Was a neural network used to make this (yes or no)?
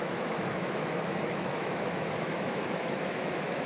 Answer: yes